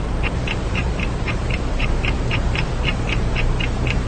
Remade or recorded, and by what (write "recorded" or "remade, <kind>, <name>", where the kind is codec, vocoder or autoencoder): remade, vocoder, BigVGAN v2